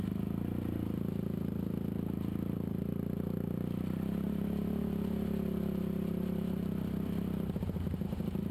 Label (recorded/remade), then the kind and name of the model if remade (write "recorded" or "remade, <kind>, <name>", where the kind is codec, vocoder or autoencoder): remade, vocoder, BigVGAN v2